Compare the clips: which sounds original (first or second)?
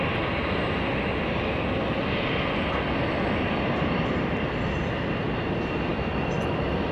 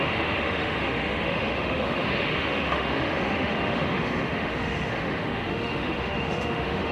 first